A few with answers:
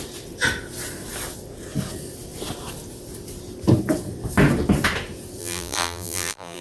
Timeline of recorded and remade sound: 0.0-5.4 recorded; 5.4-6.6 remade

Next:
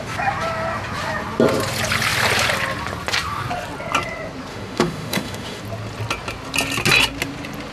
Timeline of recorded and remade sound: 0.0-4.5 recorded; 4.5-5.6 remade; 5.6-7.7 recorded

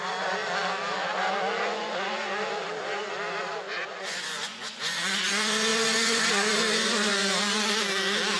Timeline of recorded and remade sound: 0.0-0.4 remade; 0.4-1.6 recorded; 1.6-2.2 remade; 2.2-3.4 recorded; 3.4-7.1 remade; 7.1-8.4 recorded

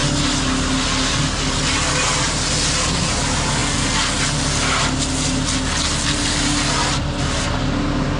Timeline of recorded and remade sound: 0.0-8.2 recorded

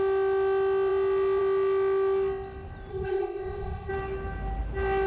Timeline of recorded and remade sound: 0.0-2.9 recorded; 2.9-3.9 remade; 3.9-5.1 recorded

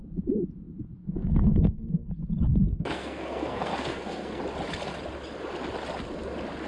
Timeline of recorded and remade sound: 0.0-1.0 recorded; 1.0-2.1 remade; 2.1-2.5 recorded; 2.5-4.4 remade; 4.4-6.7 recorded

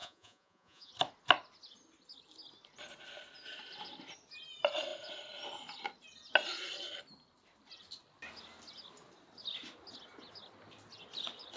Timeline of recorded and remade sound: 0.0-0.9 remade; 0.9-11.6 recorded

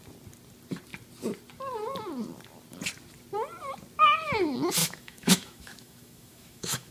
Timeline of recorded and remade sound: 0.0-4.8 recorded; 4.8-6.9 remade